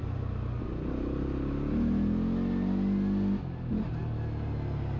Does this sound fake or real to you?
real